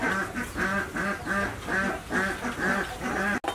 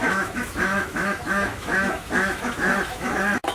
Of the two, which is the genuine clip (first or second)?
first